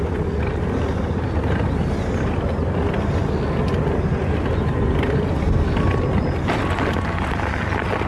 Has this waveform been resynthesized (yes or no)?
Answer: no